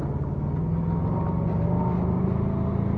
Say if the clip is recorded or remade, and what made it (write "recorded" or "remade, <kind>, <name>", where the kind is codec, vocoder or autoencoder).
recorded